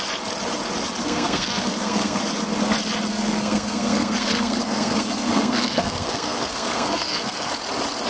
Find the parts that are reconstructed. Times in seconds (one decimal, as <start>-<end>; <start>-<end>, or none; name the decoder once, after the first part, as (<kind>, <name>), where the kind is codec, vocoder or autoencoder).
1.0-2.2 (codec, SNAC); 3.1-7.5